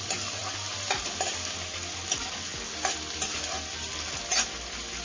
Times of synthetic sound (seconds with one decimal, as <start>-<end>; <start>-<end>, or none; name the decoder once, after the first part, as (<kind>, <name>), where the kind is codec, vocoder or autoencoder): none